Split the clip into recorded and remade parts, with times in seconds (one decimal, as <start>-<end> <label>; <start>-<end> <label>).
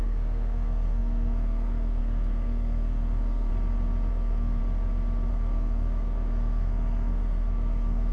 0.0-3.5 remade; 3.5-4.1 recorded; 4.1-4.6 remade; 4.6-5.3 recorded; 5.3-8.1 remade